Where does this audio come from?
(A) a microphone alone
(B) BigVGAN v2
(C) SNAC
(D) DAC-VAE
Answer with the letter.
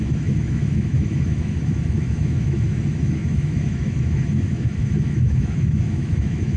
D